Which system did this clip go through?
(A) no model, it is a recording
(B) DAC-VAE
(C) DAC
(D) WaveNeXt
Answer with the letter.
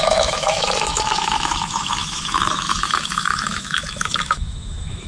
B